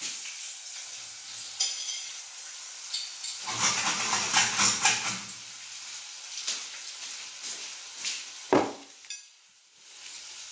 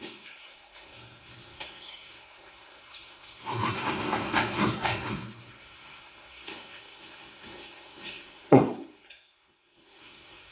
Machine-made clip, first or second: second